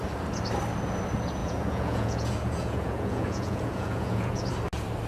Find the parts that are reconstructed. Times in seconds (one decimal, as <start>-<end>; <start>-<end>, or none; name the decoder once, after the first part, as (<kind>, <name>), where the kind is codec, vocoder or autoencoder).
1.4-4.5 (vocoder, Vocos)